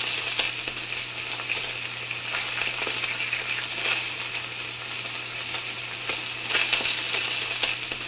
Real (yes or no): yes